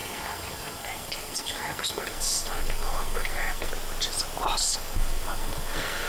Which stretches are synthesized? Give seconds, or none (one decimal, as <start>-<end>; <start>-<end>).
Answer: 0.0-3.7; 4.6-6.1